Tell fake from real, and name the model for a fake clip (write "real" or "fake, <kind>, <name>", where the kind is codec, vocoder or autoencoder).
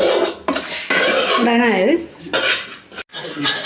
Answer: real